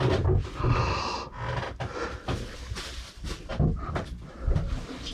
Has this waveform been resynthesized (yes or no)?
no